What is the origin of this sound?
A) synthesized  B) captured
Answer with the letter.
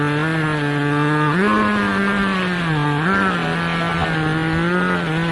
B